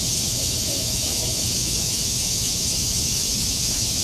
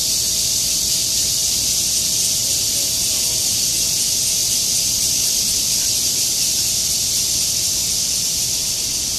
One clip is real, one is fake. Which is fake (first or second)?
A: first